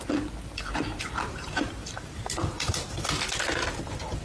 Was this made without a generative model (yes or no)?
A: yes